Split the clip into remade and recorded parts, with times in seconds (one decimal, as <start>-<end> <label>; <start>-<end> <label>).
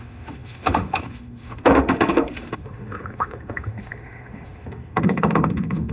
0.0-5.9 remade